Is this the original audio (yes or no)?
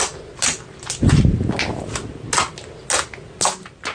yes